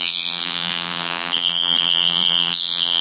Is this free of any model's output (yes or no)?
no